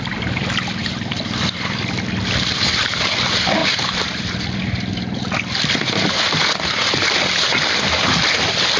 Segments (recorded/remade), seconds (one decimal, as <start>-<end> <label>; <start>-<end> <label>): 0.0-0.8 recorded; 0.8-1.9 remade; 1.9-3.6 recorded; 3.6-6.1 remade; 6.1-8.8 recorded